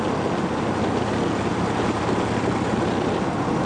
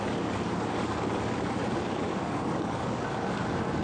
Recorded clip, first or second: first